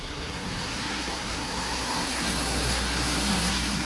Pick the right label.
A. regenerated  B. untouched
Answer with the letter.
A